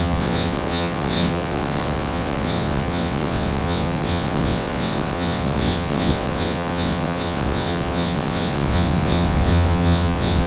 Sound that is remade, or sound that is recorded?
remade